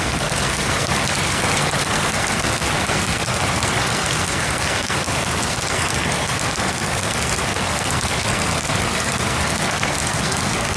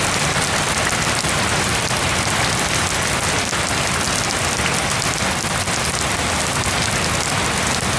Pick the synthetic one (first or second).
first